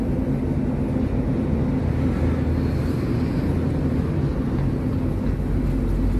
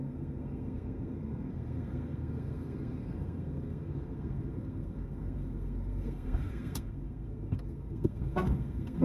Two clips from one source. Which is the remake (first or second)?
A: second